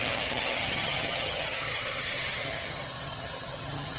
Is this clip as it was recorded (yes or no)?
no